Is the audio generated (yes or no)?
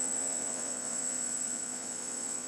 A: yes